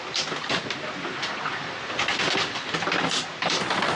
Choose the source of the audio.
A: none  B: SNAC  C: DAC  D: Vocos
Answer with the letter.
A